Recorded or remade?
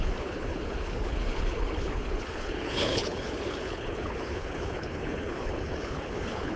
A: remade